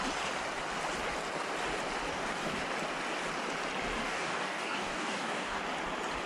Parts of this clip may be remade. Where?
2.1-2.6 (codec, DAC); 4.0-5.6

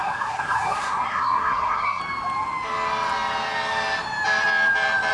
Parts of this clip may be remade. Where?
0.0-2.0 (codec, SNAC)

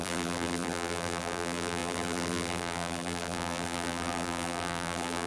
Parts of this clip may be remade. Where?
0.0-5.3 (vocoder, BigVGAN v2)

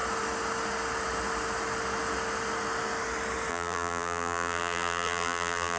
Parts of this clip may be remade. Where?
3.5-5.8 (vocoder, BigVGAN v2)

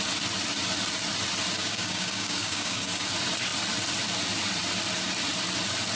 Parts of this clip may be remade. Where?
1.6-3.1 (codec, DAC)